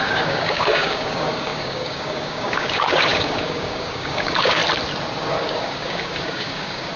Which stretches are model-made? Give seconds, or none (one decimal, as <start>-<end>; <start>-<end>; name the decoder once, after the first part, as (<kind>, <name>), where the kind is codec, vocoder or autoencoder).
0.0-4.6 (codec, DAC); 5.3-7.0